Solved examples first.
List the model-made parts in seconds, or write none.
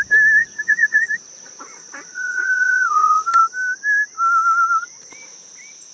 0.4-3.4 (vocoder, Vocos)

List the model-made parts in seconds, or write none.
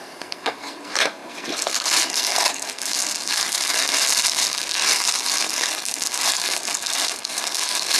0.0-8.0 (codec, SNAC)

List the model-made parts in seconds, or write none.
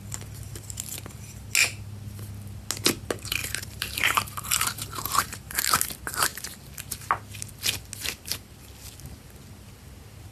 3.4-5.7 (vocoder, BigVGAN v2)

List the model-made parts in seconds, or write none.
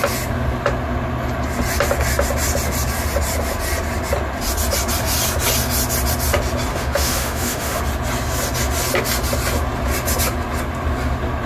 6.7-7.8 (autoencoder, DAC-VAE)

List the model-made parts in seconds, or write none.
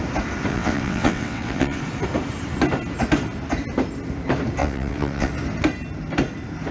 0.5-1.8 (vocoder, WaveNeXt); 4.6-5.3